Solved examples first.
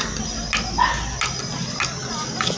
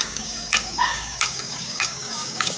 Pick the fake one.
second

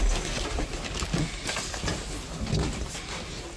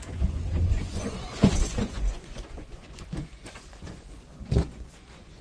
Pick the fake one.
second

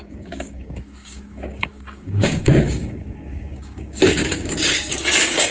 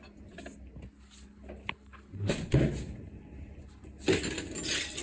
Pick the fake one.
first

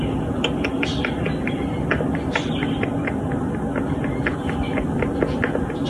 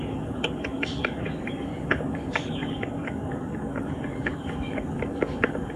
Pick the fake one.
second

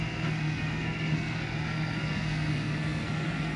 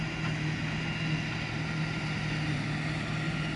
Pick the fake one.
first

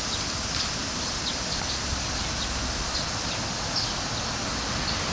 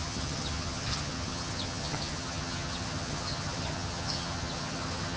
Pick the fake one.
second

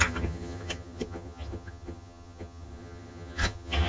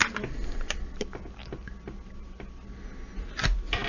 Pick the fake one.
first